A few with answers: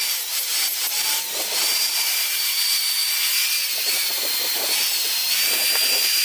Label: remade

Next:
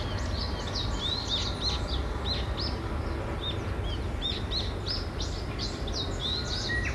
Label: recorded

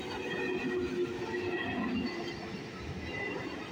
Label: recorded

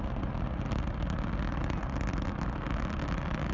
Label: recorded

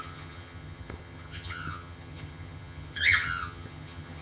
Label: remade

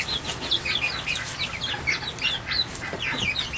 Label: recorded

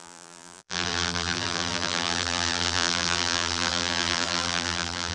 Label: remade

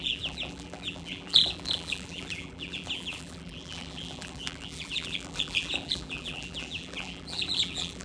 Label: remade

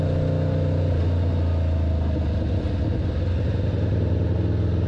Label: recorded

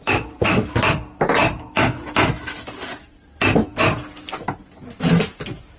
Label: recorded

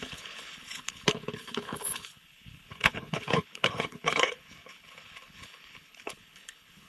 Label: remade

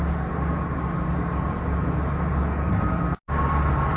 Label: recorded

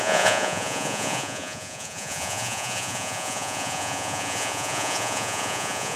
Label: remade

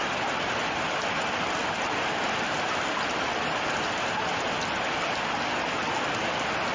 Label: recorded